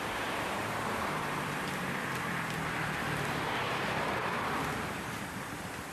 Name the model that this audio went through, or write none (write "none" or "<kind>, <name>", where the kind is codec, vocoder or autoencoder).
vocoder, BigVGAN v2